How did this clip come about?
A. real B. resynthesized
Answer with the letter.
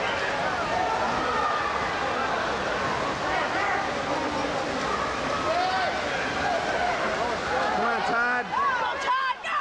A